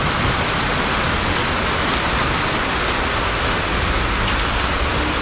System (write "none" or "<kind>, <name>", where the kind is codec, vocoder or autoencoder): none